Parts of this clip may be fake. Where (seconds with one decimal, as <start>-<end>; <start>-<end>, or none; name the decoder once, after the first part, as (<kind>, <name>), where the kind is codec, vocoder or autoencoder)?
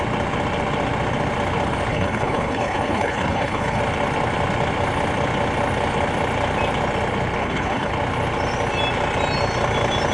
1.9-3.8 (codec, HILCodec); 7.4-7.9